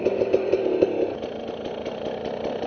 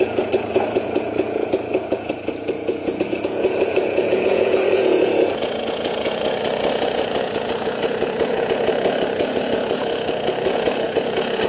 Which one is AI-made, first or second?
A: second